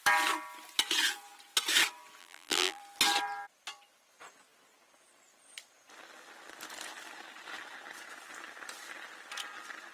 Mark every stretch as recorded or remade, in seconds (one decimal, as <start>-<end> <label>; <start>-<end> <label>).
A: 0.0-2.2 recorded; 2.2-2.8 remade; 2.8-9.9 recorded